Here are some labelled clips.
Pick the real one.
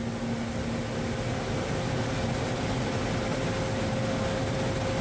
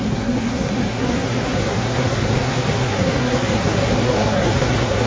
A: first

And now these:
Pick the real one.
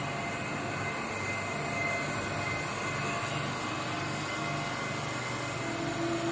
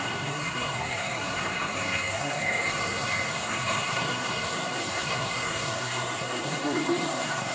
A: first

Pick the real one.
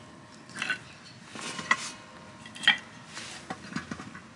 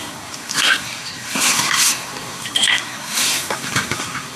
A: first